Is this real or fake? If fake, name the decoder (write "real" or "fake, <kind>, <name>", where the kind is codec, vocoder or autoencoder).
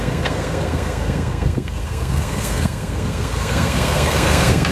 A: fake, codec, SNAC